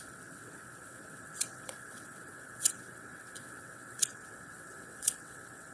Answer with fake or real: fake